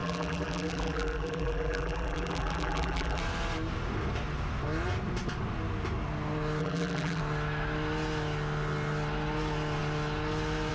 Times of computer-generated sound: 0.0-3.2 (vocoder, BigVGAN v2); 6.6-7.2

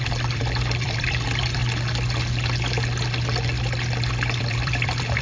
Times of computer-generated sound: 0.0-1.6 (vocoder, BigVGAN v2); 4.4-5.2

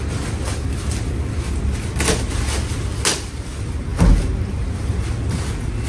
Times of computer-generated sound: none

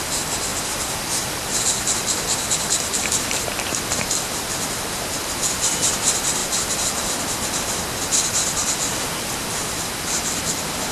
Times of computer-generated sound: 0.5-1.6 (vocoder, BigVGAN v2); 6.4-7.2

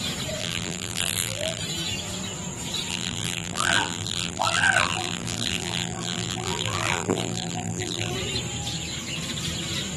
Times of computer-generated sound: 0.4-1.6 (vocoder, BigVGAN v2); 2.9-8.1

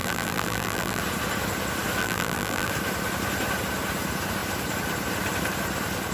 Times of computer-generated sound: 0.0-1.0 (vocoder, BigVGAN v2); 2.0-2.7

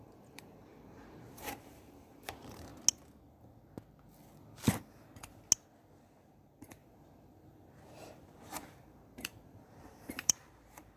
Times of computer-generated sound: 0.0-2.7 (vocoder, BigVGAN v2); 6.0-6.8; 7.9-11.0